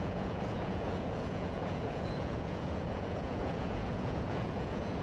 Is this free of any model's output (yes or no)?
no